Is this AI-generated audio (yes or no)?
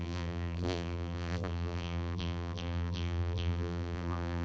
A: yes